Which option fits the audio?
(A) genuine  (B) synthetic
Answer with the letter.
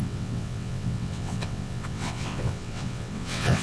B